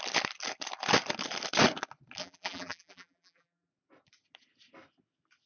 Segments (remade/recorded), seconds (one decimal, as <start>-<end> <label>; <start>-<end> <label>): 0.0-2.2 recorded; 2.2-3.7 remade; 3.7-5.5 recorded